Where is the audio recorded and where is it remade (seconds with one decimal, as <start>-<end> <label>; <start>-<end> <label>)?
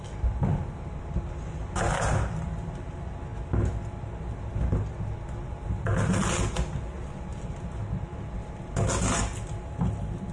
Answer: 0.0-10.3 recorded